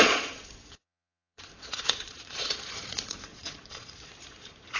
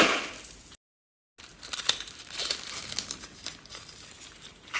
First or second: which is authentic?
second